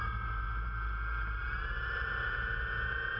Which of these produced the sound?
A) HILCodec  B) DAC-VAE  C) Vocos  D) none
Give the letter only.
D